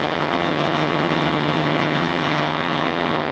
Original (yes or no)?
no